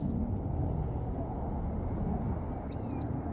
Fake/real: real